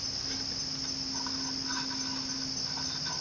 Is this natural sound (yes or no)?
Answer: yes